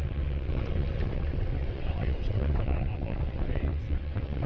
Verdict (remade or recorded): remade